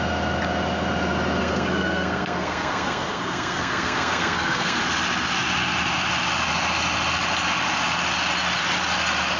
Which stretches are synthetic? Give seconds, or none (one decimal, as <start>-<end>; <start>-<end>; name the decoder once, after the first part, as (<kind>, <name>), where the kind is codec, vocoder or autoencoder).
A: 1.4-4.8 (codec, SNAC)